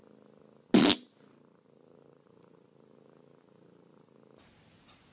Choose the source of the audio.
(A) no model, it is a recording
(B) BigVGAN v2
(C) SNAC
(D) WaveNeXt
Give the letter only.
A